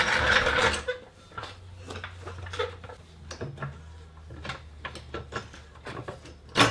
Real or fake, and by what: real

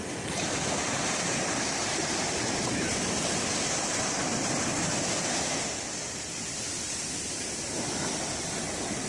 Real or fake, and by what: real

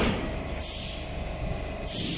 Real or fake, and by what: real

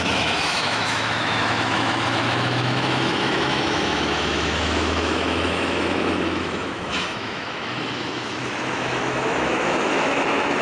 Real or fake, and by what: fake, autoencoder, DAC-VAE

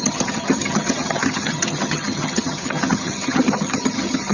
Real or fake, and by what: fake, vocoder, HiFi-GAN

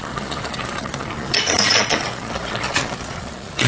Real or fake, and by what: fake, vocoder, Vocos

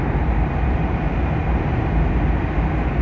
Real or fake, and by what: real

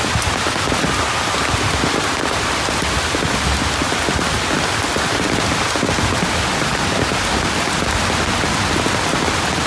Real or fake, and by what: real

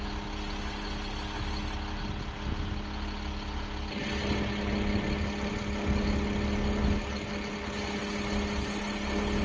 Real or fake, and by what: real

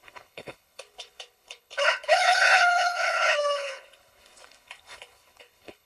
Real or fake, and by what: fake, codec, HILCodec